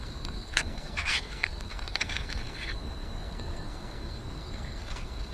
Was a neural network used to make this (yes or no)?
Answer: yes